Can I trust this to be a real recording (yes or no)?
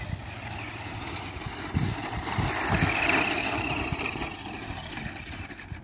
yes